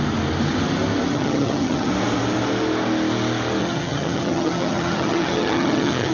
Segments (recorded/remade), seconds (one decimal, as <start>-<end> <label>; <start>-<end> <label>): 0.0-1.1 recorded; 1.1-1.9 remade; 1.9-3.6 recorded; 3.6-6.1 remade